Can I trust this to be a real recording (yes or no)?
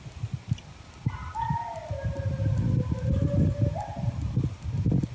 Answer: yes